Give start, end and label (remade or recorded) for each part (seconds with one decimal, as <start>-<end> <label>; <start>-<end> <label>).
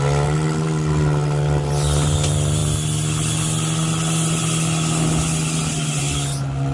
0.0-6.7 recorded